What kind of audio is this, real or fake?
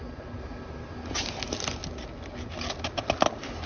real